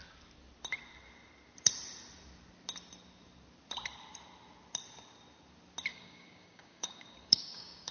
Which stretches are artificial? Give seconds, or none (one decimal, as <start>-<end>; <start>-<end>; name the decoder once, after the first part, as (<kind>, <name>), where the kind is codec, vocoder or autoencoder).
5.9-7.9 (codec, DAC)